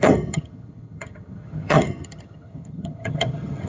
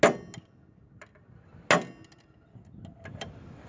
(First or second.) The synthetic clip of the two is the first